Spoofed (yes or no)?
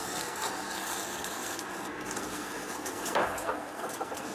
yes